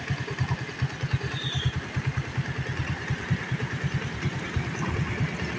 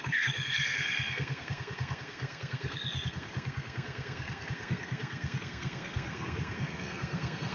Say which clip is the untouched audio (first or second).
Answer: first